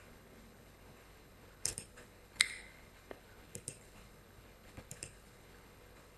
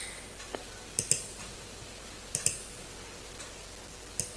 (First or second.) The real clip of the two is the second